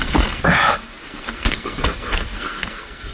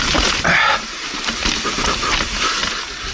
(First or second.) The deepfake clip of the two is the first